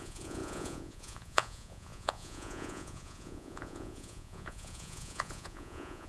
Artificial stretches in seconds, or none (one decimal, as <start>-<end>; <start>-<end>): 0.0-6.1

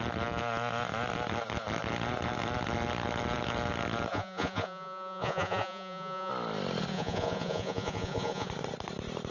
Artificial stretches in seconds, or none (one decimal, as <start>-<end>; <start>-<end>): 4.1-6.3; 6.9-8.5

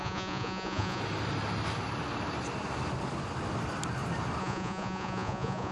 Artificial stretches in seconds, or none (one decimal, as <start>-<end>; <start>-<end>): 0.0-1.0; 4.4-5.7

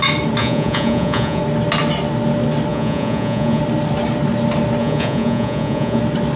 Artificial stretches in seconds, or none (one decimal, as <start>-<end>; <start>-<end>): 0.4-1.4; 2.7-3.6; 4.8-6.0

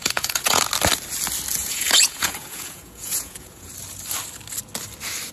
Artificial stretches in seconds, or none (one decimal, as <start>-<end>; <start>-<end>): 0.0-0.6; 1.6-3.7

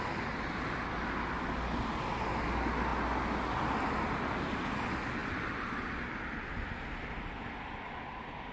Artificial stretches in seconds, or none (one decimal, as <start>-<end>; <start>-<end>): none